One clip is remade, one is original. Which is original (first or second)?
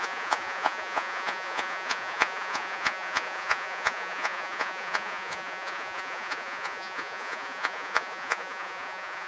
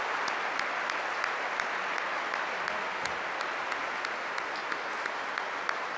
second